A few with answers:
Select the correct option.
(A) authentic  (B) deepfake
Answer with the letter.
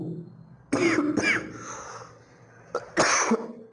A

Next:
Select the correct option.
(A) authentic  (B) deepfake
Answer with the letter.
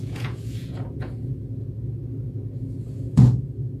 B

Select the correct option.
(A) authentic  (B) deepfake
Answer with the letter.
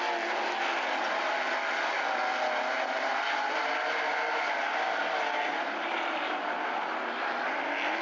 A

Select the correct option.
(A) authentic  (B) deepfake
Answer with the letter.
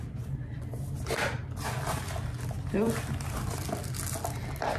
A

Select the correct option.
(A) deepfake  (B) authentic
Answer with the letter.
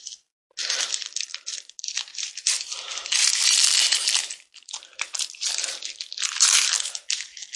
B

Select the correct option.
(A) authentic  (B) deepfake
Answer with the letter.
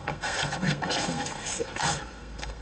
B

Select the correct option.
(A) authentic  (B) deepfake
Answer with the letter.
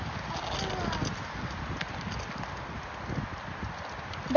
A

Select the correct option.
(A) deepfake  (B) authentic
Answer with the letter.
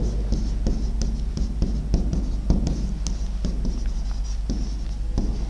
B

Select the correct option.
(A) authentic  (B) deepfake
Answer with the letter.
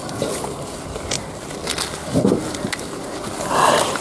A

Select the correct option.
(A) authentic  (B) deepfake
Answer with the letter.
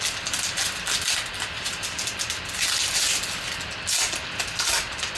A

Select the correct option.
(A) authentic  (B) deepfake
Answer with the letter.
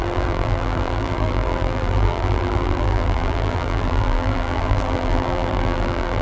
B